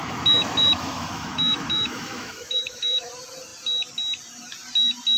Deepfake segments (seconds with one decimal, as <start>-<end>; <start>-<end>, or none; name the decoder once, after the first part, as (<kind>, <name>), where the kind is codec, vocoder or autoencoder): 0.0-3.1 (autoencoder, DAC-VAE)